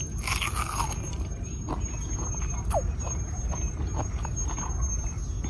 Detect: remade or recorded recorded